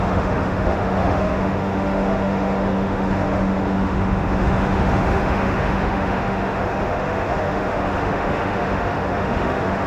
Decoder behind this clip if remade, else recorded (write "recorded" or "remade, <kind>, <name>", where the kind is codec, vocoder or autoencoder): remade, autoencoder, DAC-VAE